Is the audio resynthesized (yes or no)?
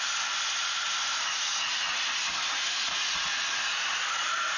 no